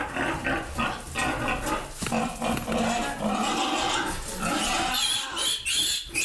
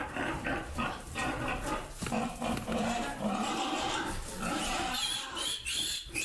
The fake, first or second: second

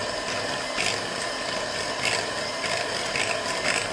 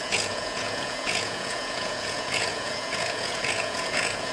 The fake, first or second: second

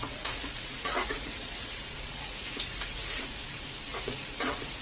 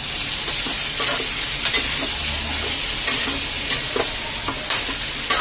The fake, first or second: first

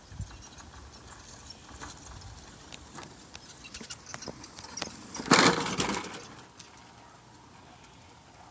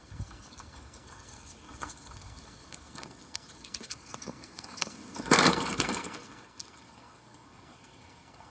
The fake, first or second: second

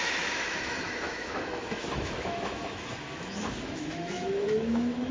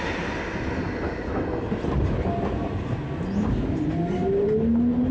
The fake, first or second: first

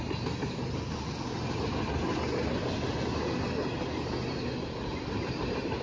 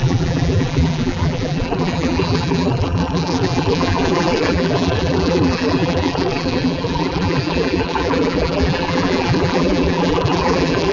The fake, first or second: second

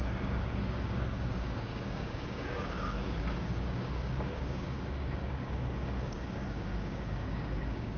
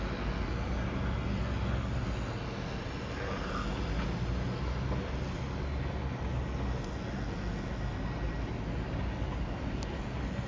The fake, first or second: first